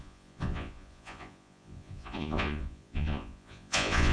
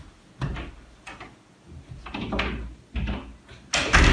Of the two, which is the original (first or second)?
second